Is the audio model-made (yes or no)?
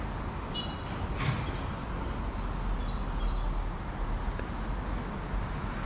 no